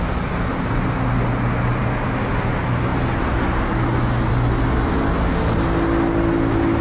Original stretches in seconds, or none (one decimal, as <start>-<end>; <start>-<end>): 0.0-6.8